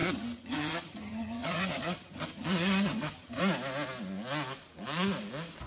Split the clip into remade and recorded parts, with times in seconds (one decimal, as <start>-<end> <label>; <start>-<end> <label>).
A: 0.0-3.4 remade; 3.4-5.7 recorded